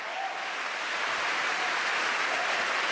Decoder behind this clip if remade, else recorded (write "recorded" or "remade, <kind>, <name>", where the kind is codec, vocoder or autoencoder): recorded